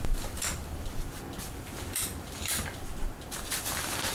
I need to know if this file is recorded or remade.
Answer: remade